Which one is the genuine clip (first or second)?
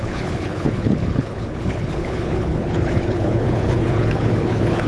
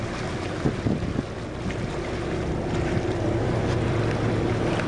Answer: second